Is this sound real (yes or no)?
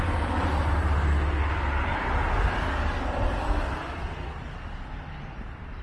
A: yes